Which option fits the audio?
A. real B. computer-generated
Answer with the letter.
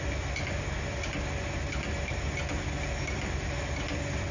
A